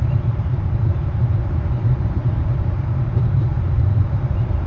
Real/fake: fake